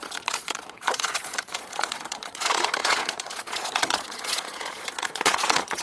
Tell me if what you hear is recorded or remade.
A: remade